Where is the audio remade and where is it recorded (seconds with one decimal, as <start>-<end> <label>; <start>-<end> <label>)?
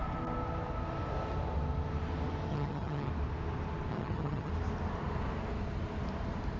0.0-2.5 recorded; 2.5-3.1 remade; 3.1-3.9 recorded; 3.9-4.5 remade; 4.5-6.6 recorded